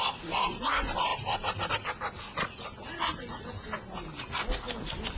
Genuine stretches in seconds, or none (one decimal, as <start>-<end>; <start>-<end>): 0.0-1.1; 1.7-5.2